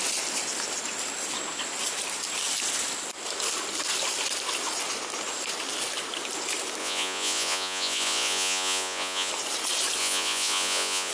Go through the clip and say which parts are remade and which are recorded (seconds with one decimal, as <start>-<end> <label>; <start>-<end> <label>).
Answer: 0.0-6.8 recorded; 6.8-9.3 remade; 9.3-10.0 recorded; 10.0-11.1 remade